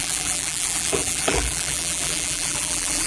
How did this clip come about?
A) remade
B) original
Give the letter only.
A